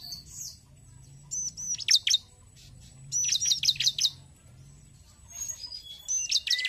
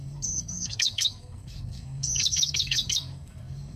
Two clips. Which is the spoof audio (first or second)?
second